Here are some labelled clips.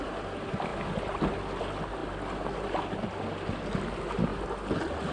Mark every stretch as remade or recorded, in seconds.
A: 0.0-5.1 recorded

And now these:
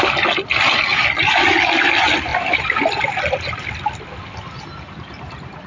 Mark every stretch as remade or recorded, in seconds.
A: 0.0-2.3 recorded; 2.3-2.8 remade; 2.8-5.7 recorded